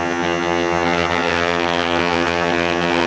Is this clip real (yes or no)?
no